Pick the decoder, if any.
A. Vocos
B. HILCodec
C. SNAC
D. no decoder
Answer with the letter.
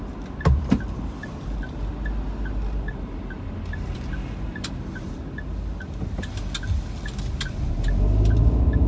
D